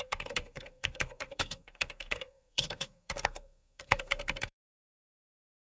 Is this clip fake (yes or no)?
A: yes